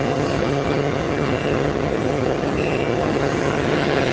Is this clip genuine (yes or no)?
no